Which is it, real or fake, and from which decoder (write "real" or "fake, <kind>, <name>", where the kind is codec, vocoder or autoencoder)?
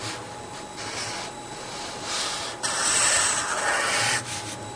fake, vocoder, BigVGAN v2